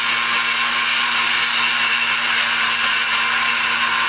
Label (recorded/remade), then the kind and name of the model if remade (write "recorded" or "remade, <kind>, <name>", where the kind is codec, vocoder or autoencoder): recorded